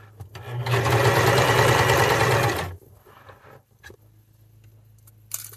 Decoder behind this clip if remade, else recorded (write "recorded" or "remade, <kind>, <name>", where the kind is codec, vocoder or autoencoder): recorded